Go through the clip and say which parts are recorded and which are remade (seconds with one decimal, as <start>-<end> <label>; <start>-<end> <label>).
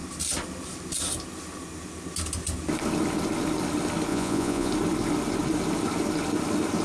0.0-4.1 recorded; 4.1-4.7 remade; 4.7-6.8 recorded